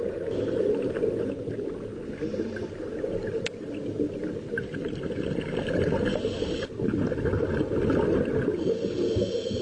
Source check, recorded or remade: recorded